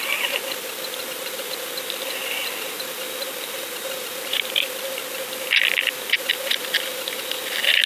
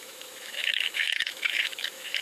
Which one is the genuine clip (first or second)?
first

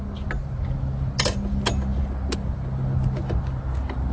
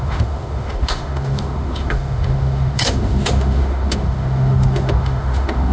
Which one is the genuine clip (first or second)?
first